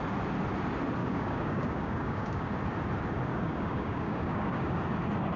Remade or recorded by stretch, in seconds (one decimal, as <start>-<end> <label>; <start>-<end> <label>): 0.0-1.0 recorded; 1.0-2.5 remade; 2.5-3.3 recorded; 3.3-4.8 remade; 4.8-5.4 recorded